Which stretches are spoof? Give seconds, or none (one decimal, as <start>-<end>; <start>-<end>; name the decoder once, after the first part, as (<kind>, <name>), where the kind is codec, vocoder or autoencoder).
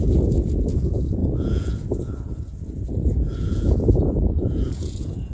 0.0-5.3 (vocoder, Vocos)